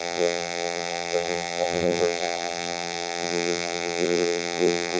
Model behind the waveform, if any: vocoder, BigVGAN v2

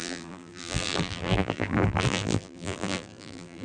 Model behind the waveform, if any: vocoder, BigVGAN v2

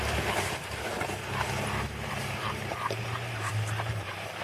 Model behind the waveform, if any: vocoder, BigVGAN v2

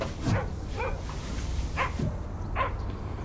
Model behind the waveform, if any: none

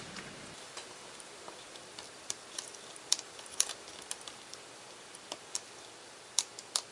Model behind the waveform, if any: vocoder, BigVGAN v2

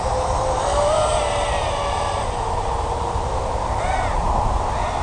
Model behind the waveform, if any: vocoder, BigVGAN v2